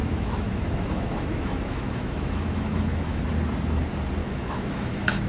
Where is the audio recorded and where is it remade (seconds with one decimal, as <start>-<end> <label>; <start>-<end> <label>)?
0.0-3.2 remade; 3.2-4.2 recorded; 4.2-5.3 remade